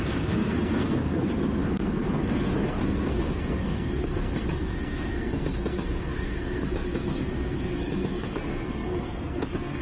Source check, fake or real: fake